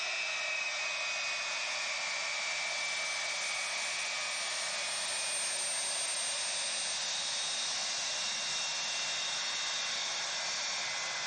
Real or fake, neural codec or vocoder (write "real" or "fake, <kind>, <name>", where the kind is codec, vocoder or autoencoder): real